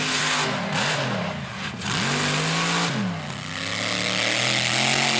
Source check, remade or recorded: recorded